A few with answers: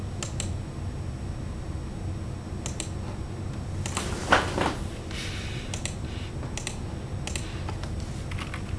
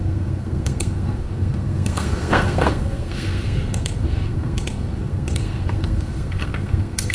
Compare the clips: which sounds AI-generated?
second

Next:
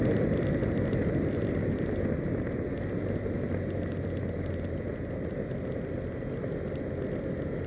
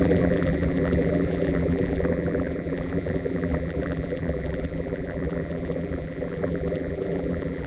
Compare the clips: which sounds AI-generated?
second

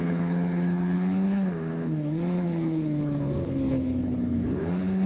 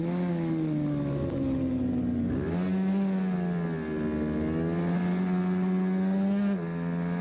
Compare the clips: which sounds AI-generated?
first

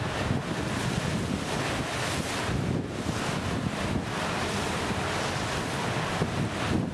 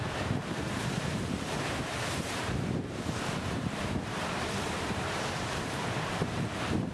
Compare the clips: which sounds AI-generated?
second